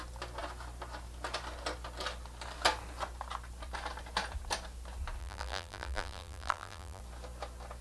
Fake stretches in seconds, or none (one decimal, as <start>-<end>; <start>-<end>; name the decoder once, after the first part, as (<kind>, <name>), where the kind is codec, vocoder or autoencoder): 5.2-7.0 (vocoder, BigVGAN v2)